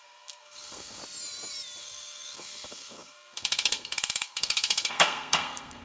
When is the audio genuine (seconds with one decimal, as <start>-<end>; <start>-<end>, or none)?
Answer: 1.0-1.8